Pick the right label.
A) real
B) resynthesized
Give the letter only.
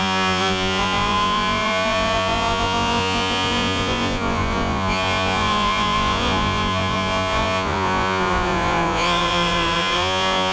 B